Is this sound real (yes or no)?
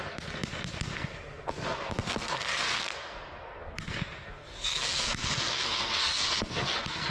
no